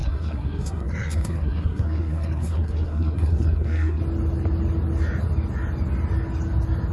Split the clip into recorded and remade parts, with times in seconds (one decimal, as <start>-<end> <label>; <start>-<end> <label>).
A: 0.0-4.0 remade; 4.0-6.9 recorded